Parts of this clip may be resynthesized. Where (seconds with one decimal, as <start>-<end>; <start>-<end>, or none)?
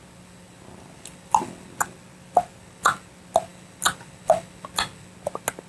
none